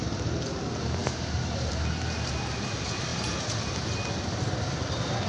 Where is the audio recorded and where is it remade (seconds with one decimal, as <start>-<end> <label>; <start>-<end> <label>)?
0.0-5.3 recorded